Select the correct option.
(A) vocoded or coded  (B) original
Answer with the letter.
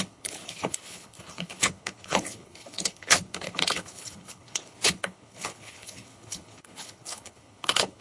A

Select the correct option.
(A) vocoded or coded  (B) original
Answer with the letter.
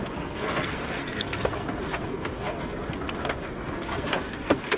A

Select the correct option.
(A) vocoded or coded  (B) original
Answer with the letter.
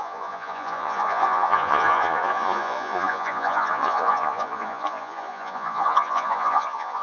A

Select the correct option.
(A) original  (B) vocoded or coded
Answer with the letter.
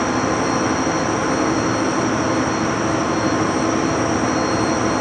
A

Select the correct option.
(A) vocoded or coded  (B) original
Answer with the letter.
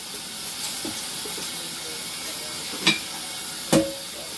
B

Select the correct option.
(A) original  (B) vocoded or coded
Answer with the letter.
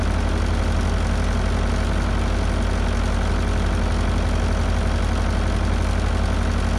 A